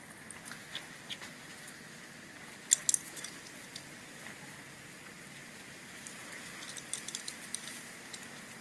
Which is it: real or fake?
real